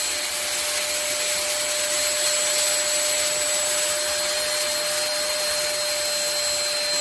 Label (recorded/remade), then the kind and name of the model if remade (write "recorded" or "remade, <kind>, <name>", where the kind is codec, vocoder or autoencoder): recorded